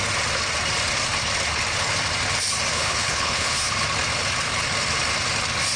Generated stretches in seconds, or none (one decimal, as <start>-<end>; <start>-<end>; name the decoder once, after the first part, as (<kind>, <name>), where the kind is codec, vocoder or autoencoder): 2.7-3.7 (codec, HILCodec)